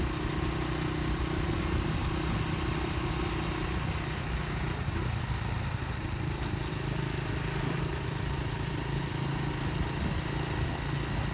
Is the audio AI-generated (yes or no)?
no